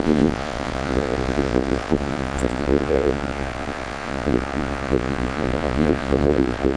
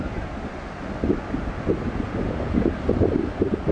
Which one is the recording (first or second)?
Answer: second